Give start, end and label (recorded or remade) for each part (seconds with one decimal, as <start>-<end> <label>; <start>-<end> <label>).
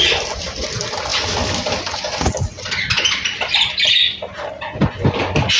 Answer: 0.0-5.6 recorded